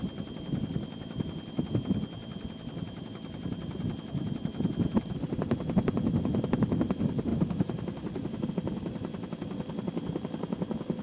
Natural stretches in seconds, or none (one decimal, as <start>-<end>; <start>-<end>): 0.0-7.3; 8.5-11.0